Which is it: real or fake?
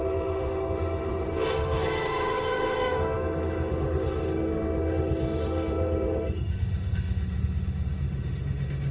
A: fake